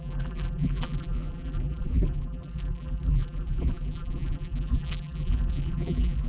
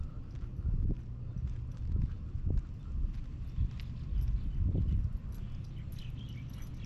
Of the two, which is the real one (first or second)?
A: second